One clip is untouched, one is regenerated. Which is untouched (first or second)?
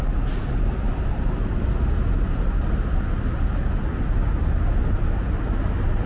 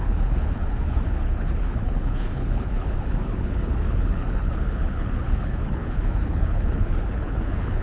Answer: first